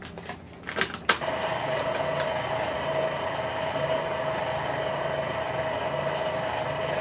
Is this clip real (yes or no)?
yes